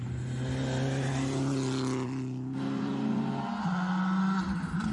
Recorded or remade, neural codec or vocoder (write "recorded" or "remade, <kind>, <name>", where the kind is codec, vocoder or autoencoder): recorded